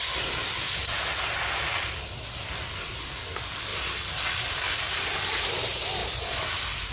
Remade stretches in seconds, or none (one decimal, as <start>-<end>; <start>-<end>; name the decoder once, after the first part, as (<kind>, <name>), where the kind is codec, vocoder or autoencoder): none